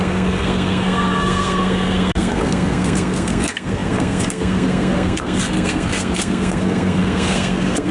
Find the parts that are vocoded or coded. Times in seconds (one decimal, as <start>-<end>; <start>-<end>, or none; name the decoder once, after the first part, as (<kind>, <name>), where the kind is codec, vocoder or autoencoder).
0.0-7.9 (codec, SNAC)